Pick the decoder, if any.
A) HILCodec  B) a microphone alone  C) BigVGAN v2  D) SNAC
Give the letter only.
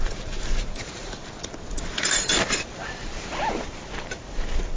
C